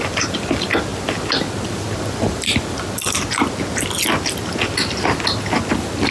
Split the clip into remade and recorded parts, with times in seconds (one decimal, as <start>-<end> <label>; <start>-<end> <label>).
0.0-6.1 recorded

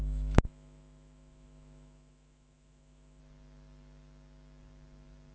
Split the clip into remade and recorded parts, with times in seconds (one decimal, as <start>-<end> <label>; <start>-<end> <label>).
0.0-3.2 remade; 3.2-5.3 recorded

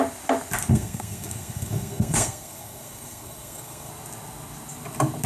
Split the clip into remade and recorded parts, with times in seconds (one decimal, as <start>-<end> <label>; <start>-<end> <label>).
0.0-0.7 recorded; 0.7-3.9 remade; 3.9-5.3 recorded

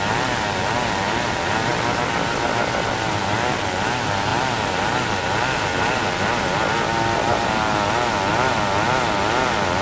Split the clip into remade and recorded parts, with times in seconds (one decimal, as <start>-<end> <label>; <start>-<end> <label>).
0.0-9.8 recorded

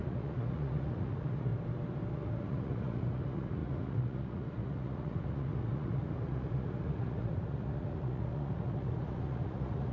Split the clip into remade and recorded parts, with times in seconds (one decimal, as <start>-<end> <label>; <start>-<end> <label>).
0.0-1.5 remade; 1.5-2.1 recorded; 2.1-9.9 remade

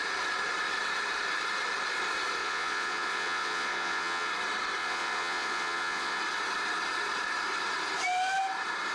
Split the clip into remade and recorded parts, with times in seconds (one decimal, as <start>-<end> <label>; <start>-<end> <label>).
0.0-2.4 recorded; 2.4-4.3 remade; 4.3-4.8 recorded; 4.8-6.2 remade; 6.2-8.9 recorded

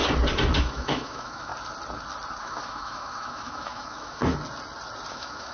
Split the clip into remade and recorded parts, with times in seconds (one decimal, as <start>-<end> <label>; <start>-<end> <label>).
0.0-0.6 recorded; 0.6-1.5 remade; 1.5-2.4 recorded; 2.4-4.2 remade; 4.2-5.1 recorded; 5.1-5.5 remade

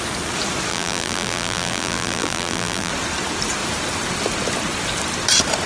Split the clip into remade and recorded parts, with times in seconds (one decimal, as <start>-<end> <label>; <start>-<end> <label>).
0.0-0.7 recorded; 0.7-2.9 remade; 2.9-5.7 recorded